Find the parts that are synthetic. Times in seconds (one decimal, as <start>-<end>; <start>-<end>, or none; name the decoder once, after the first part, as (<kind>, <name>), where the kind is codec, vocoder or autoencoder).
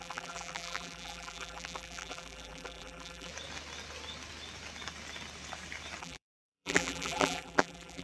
0.0-3.3 (vocoder, BigVGAN v2); 6.0-8.0